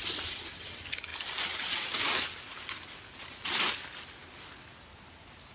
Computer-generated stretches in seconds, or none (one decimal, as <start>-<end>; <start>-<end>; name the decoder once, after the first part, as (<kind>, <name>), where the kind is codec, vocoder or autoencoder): none

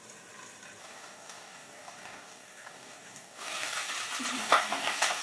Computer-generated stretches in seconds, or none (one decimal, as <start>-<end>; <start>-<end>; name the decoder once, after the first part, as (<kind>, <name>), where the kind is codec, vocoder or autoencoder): 0.8-3.9 (codec, DAC); 4.4-5.2

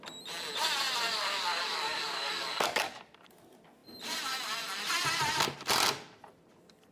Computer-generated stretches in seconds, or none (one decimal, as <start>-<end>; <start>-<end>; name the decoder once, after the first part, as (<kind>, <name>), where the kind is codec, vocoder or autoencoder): 1.1-3.0 (codec, DAC)

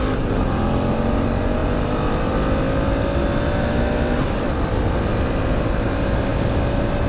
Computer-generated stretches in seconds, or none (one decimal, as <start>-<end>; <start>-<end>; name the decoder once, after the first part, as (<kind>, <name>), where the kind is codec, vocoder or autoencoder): none

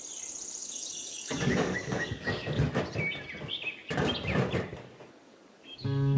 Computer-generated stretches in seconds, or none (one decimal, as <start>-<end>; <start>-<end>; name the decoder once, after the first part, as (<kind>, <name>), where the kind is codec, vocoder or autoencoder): 0.6-2.8 (codec, DAC); 4.7-6.2

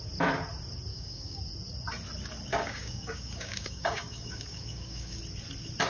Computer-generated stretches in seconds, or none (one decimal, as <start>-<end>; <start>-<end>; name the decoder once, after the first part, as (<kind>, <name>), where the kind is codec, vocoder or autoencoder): 0.9-1.4 (codec, DAC); 2.5-5.2